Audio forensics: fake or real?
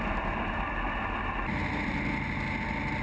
real